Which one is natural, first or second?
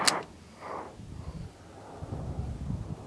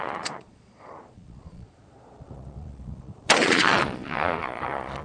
first